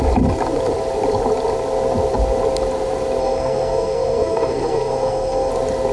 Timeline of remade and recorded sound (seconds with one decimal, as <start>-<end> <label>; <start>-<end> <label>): 0.0-3.2 recorded; 3.2-5.5 remade; 5.5-5.9 recorded